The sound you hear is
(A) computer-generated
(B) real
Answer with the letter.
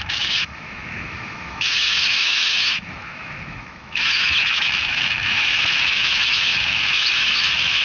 A